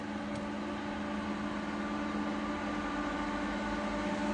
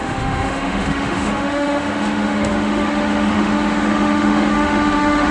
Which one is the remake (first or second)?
second